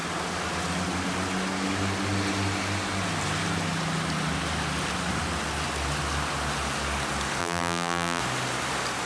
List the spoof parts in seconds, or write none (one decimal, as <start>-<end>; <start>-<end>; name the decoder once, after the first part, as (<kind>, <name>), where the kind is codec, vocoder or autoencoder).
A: 7.4-8.2 (vocoder, BigVGAN v2)

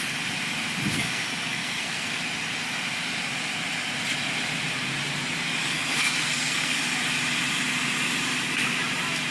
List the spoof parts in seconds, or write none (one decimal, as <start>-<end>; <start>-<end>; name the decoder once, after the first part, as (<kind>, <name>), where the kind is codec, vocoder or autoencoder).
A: 0.9-2.2 (codec, SNAC); 5.6-6.8

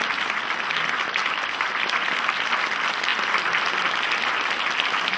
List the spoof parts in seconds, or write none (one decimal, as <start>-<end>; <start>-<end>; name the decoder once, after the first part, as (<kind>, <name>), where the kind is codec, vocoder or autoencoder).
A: 1.2-2.4 (vocoder, BigVGAN v2); 3.1-3.7